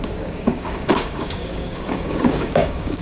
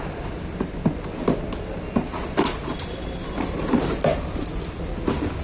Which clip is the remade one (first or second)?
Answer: first